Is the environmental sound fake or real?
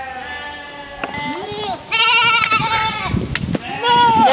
real